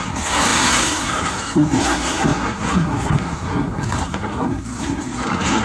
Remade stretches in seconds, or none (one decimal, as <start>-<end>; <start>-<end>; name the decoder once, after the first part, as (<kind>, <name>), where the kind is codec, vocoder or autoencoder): 0.0-5.6 (codec, SNAC)